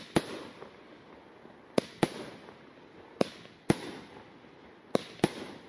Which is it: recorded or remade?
recorded